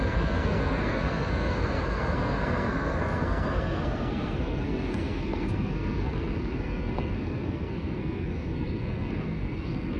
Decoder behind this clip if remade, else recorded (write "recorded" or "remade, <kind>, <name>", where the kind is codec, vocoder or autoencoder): remade, codec, SNAC